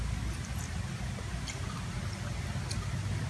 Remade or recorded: recorded